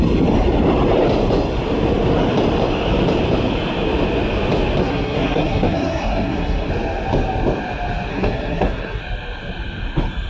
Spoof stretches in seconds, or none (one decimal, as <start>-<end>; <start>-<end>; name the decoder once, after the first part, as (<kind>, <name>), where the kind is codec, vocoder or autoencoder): 4.8-6.7 (codec, SNAC); 8.1-9.0